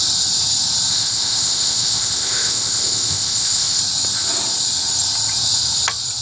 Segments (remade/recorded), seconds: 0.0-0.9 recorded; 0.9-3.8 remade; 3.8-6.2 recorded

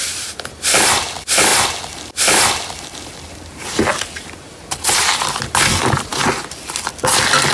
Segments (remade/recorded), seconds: 0.0-7.5 recorded

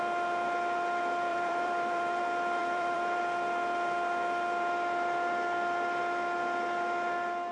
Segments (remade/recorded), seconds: 0.0-1.3 recorded; 1.3-2.2 remade; 2.2-2.6 recorded; 2.6-3.2 remade; 3.2-7.5 recorded

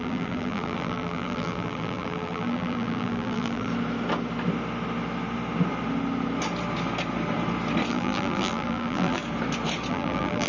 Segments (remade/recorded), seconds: 0.0-3.7 remade; 3.7-7.9 recorded; 7.9-9.2 remade; 9.2-9.9 recorded; 9.9-10.5 remade

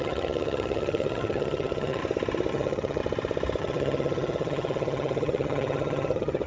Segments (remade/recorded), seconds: 0.0-2.0 remade; 2.0-2.5 recorded; 2.5-3.0 remade; 3.0-3.6 recorded; 3.6-6.5 remade